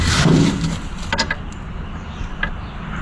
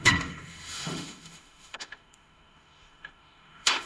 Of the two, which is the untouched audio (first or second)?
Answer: first